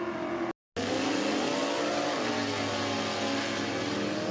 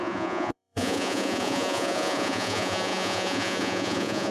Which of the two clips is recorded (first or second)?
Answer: first